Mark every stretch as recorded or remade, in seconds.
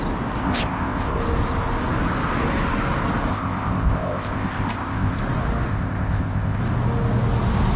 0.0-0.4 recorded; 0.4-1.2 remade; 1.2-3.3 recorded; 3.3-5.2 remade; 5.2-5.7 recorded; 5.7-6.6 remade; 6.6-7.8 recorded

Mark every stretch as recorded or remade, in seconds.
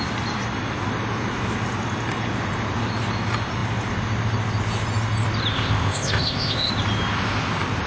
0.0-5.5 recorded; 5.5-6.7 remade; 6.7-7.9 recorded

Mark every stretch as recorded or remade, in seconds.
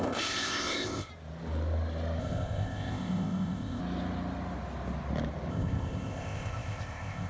0.0-1.1 remade; 1.1-2.2 recorded; 2.2-3.8 remade; 3.8-5.5 recorded; 5.5-7.3 remade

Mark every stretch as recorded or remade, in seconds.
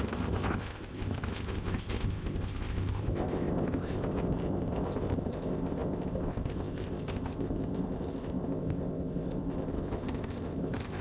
0.0-11.0 remade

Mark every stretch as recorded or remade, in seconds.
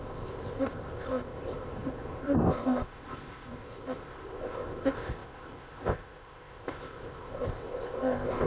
0.0-8.5 remade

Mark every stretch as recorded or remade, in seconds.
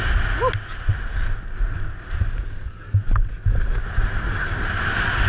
0.0-5.3 recorded